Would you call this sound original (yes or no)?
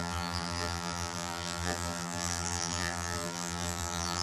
no